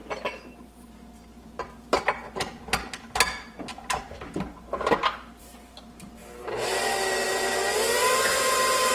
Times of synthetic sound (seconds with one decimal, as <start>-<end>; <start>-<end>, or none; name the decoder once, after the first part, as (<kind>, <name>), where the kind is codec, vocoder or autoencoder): 0.0-2.0 (vocoder, BigVGAN v2); 6.2-7.1